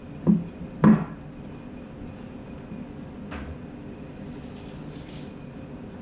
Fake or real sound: real